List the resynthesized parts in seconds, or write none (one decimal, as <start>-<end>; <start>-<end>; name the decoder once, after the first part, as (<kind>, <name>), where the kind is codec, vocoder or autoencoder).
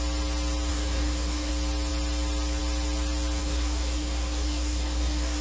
0.7-1.5 (codec, DAC); 3.4-5.4